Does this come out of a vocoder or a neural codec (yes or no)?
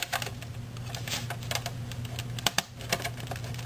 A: no